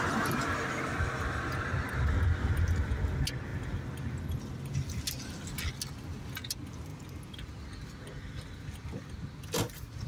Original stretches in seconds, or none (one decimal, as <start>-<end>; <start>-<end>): 0.0-10.1